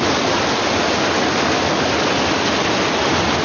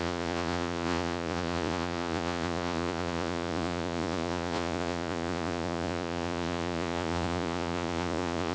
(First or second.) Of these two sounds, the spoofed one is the second